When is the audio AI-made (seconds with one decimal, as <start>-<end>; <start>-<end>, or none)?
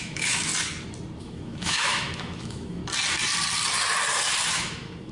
0.0-0.5; 1.2-2.8; 4.5-5.1